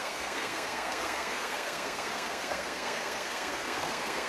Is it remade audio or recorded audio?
remade